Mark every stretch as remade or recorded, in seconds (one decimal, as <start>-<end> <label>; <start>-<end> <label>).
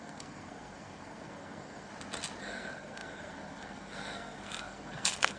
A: 0.0-1.9 remade; 1.9-2.4 recorded; 2.4-5.4 remade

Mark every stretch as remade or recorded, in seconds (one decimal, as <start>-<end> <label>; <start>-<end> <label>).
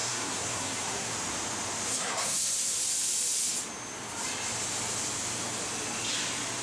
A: 0.0-1.1 remade; 1.1-1.9 recorded; 1.9-2.8 remade; 2.8-6.6 recorded